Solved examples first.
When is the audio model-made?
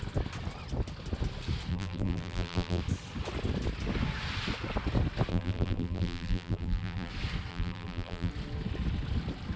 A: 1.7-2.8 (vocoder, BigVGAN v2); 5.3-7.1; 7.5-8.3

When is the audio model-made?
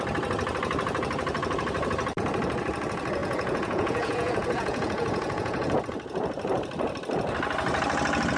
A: 3.2-5.8 (vocoder, Vocos)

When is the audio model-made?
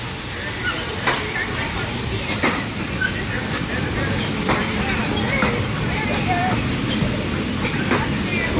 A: none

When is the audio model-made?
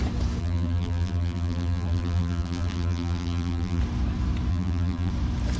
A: 0.4-3.8 (vocoder, BigVGAN v2); 4.5-5.1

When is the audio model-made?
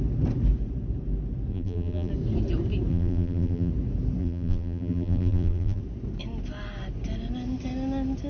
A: 1.5-2.1 (vocoder, BigVGAN v2); 2.9-3.7; 4.2-5.8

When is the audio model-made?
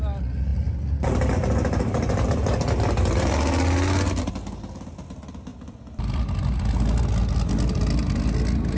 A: none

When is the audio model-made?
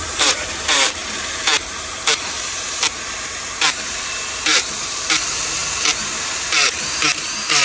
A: 0.0-7.6 (vocoder, BigVGAN v2)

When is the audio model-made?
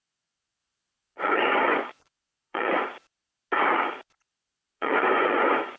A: 0.0-2.9 (vocoder, Vocos); 4.3-5.8